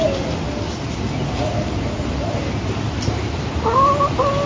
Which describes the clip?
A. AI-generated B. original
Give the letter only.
B